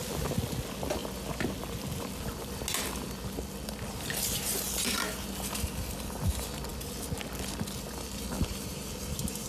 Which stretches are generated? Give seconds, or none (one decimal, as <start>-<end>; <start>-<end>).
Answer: none